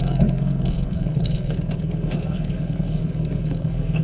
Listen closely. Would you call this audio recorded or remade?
remade